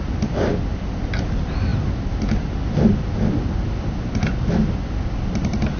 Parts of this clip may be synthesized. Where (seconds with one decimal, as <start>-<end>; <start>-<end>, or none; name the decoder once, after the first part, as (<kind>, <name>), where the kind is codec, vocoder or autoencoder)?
none